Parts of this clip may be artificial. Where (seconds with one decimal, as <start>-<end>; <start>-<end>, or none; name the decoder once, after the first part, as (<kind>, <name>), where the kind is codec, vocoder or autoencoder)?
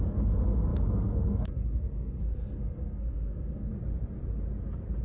0.0-3.7 (codec, SNAC)